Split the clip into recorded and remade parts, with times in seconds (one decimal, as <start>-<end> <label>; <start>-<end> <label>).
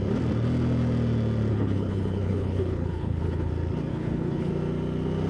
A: 0.0-1.5 recorded; 1.5-3.5 remade; 3.5-3.9 recorded; 3.9-4.5 remade; 4.5-5.3 recorded